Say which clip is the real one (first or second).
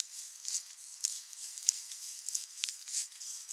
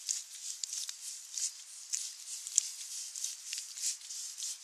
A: second